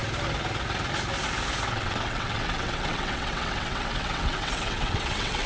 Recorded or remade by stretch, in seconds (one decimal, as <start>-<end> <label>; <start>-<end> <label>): 0.0-1.7 recorded; 1.7-5.5 remade